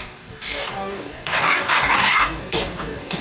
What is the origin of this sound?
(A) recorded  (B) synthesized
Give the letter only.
B